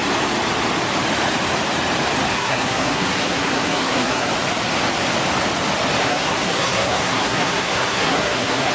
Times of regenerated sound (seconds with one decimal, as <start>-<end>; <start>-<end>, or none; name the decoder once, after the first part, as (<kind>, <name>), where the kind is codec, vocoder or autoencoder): 2.3-4.3 (codec, SNAC); 6.0-8.7